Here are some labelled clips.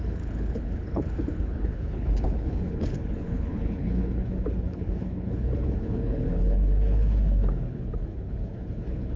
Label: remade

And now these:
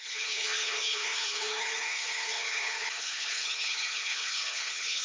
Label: remade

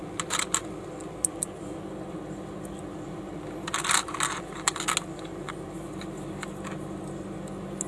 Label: recorded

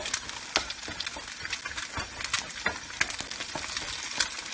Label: recorded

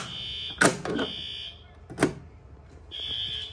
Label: recorded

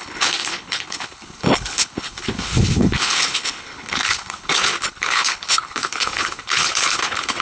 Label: remade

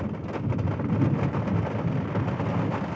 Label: recorded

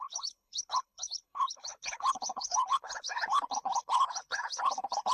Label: remade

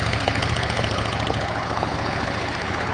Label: remade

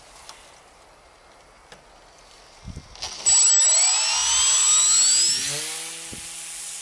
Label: recorded